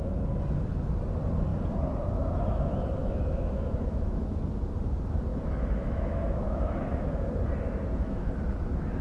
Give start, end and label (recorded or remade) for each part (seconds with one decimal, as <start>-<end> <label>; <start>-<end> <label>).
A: 0.0-3.0 recorded; 3.0-4.4 remade; 4.4-5.3 recorded; 5.3-7.3 remade; 7.3-9.0 recorded